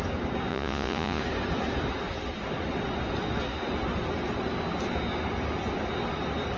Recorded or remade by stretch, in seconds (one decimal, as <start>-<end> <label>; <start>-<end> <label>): 0.0-0.5 recorded; 0.5-1.2 remade; 1.2-6.6 recorded